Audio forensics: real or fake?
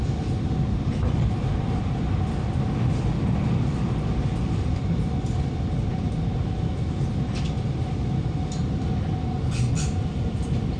real